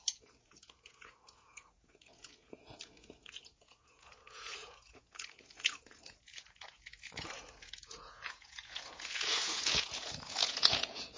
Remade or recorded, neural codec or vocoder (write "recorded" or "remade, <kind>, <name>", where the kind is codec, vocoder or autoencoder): remade, vocoder, Vocos